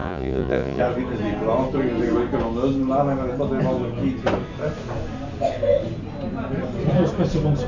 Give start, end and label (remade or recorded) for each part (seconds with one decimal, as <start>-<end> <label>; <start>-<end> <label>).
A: 0.0-0.8 remade; 0.8-7.7 recorded